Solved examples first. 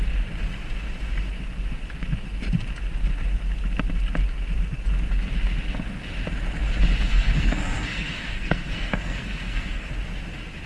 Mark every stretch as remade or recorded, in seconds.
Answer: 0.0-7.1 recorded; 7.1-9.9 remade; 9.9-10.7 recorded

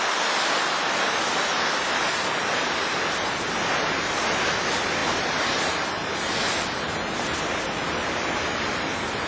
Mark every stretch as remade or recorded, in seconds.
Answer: 0.0-9.3 recorded

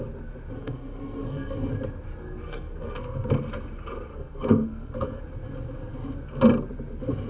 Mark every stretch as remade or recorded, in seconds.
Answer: 0.0-0.6 recorded; 0.6-1.7 remade; 1.7-2.2 recorded; 2.2-3.3 remade; 3.3-4.1 recorded; 4.1-5.2 remade; 5.2-7.3 recorded

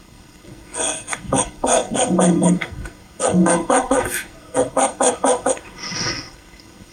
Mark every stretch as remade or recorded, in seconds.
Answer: 0.0-6.9 remade

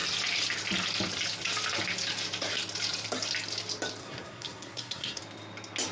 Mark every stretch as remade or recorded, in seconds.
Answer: 0.0-4.0 recorded; 4.0-5.2 remade; 5.2-5.9 recorded